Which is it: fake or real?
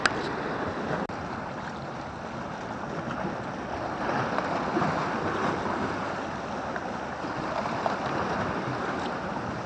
real